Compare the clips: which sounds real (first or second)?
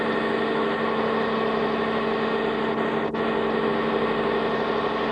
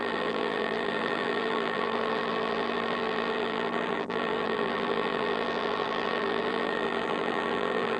first